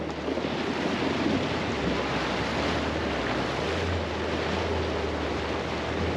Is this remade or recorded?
recorded